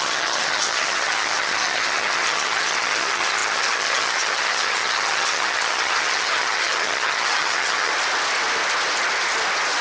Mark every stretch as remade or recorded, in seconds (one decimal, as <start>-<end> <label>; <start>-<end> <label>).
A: 0.0-7.9 remade; 7.9-9.8 recorded